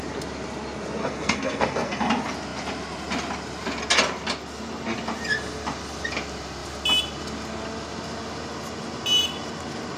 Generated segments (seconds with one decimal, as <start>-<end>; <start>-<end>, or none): 1.0-2.1